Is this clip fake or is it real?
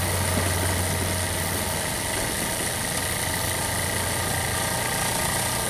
real